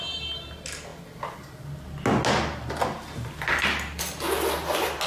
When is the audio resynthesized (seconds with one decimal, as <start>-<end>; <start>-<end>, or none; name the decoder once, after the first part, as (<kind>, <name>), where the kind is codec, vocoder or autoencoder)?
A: none